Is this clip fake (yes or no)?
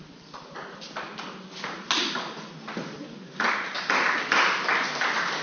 no